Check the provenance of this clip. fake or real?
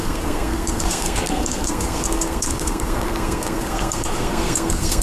fake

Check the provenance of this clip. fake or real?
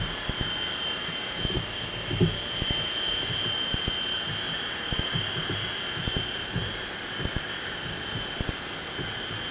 real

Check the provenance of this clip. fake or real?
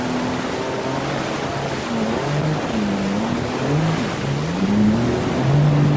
real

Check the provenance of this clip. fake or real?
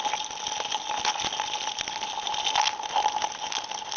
real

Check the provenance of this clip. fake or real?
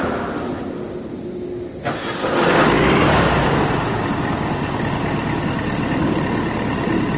real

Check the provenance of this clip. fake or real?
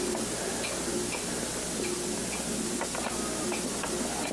real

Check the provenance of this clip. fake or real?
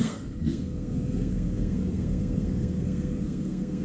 fake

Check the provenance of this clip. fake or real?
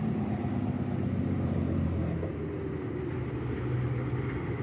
real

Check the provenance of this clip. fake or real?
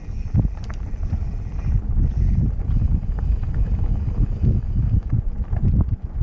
real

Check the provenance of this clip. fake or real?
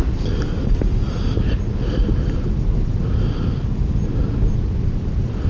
real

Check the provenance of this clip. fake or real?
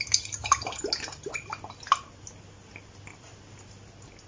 real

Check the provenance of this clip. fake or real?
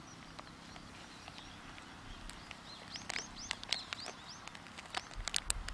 real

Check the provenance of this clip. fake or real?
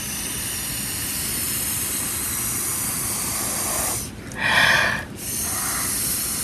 real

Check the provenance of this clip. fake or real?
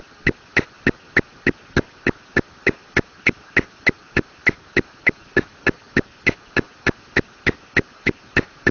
real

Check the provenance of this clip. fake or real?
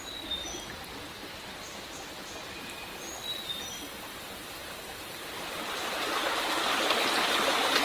real